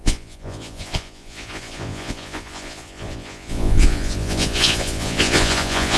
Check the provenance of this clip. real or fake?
fake